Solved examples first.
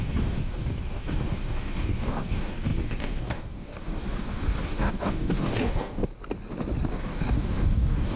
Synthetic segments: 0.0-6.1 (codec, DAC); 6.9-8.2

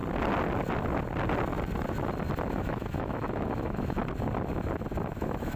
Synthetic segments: 2.5-4.0 (autoencoder, DAC-VAE); 5.1-5.6